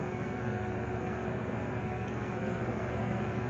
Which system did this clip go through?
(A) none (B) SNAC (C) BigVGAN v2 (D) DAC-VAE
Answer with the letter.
B